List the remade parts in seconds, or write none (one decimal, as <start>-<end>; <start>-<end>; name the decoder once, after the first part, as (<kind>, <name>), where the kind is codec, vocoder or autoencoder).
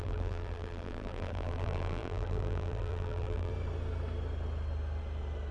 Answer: 0.0-3.5 (vocoder, BigVGAN v2)